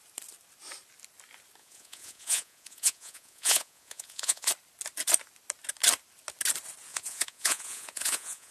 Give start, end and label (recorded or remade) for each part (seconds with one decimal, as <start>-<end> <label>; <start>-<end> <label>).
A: 0.0-1.6 recorded; 1.6-4.5 remade; 4.5-6.9 recorded; 6.9-8.5 remade